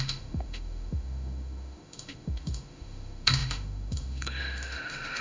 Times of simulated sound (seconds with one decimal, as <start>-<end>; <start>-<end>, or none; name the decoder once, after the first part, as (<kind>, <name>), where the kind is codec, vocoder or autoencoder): 0.0-5.2 (autoencoder, DAC-VAE)